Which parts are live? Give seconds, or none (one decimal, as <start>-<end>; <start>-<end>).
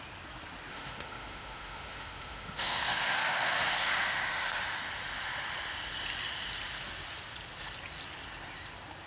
0.0-0.7; 4.6-9.1